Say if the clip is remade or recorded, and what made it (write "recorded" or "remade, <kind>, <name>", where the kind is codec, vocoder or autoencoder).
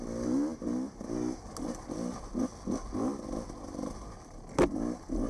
recorded